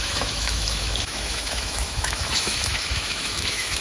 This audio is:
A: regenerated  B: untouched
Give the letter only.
A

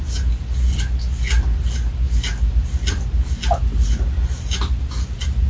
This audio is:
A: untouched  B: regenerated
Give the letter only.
A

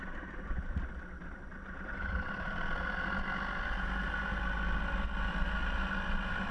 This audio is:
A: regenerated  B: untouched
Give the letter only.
B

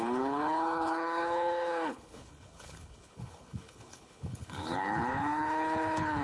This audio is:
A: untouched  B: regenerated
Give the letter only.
B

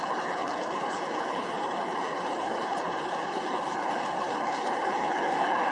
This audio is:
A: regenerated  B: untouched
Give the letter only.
A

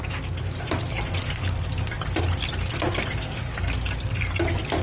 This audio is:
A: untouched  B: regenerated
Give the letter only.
A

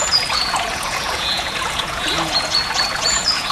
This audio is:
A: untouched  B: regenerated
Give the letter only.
B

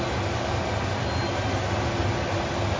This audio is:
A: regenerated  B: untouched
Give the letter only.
B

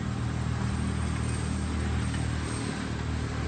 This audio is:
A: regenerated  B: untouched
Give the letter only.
B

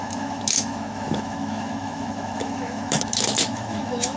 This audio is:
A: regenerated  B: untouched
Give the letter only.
A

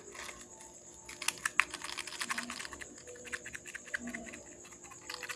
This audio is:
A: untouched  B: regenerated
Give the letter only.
A